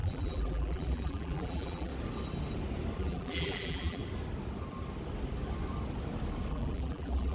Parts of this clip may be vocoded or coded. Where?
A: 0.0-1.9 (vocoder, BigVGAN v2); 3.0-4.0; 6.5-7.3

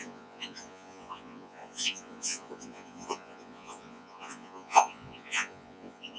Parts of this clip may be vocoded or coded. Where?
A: 0.0-6.2 (vocoder, Vocos)

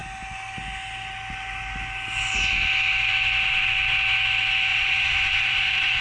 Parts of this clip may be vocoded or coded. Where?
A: 4.7-6.0 (vocoder, Vocos)